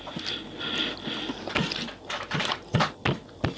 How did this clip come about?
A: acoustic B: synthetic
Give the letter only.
A